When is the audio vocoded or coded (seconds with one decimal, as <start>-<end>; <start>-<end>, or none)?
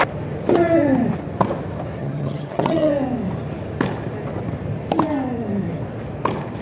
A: 2.0-2.9